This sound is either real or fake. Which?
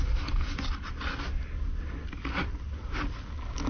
real